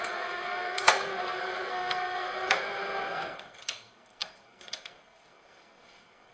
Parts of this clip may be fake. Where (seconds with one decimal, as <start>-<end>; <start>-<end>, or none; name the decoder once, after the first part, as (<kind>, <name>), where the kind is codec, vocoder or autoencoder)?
0.0-6.3 (codec, SNAC)